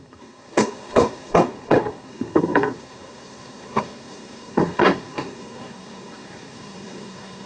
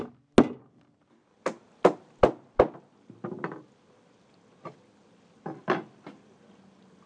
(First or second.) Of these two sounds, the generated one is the first